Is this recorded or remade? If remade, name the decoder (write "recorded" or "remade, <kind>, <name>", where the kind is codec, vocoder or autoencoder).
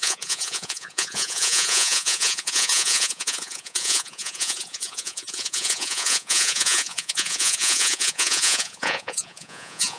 remade, vocoder, Vocos